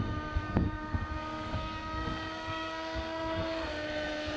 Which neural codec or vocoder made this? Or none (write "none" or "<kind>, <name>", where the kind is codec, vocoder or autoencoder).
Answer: codec, SNAC